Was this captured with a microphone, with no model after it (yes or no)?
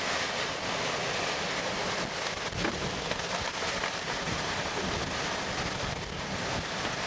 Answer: yes